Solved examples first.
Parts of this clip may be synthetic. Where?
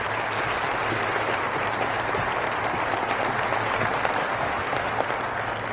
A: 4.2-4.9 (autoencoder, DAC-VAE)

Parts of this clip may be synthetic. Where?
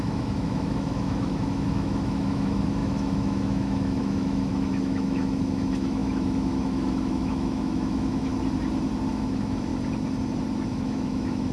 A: 0.0-8.3 (autoencoder, DAC-VAE); 9.1-9.7; 10.7-11.5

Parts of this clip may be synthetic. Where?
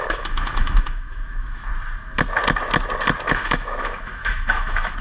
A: 0.0-1.7 (autoencoder, DAC-VAE); 3.3-5.0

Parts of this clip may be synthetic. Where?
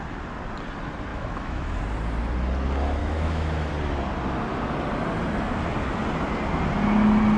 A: 1.1-1.8 (autoencoder, DAC-VAE); 3.0-3.7